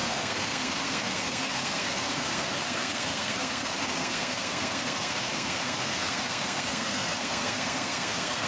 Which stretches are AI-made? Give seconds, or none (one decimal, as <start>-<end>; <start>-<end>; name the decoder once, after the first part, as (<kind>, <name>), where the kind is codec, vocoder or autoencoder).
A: 0.0-8.5 (codec, SNAC)